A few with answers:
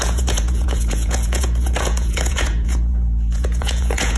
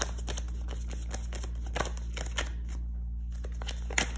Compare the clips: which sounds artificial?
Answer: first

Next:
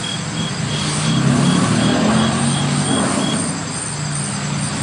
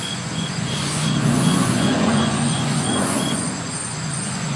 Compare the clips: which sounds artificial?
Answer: second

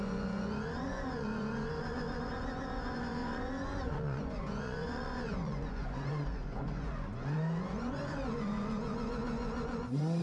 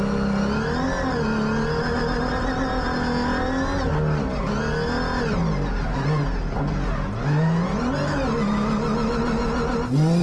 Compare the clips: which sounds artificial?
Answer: first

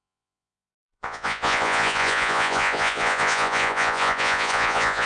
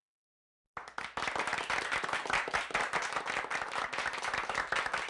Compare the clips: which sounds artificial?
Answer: first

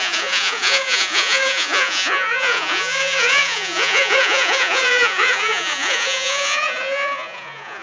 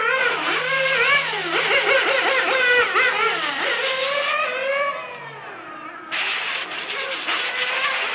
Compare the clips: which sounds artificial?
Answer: first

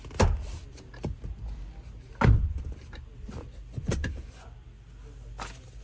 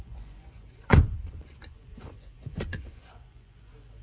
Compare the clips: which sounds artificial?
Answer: second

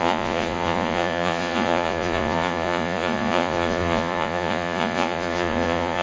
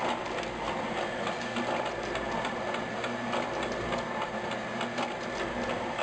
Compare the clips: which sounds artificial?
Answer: first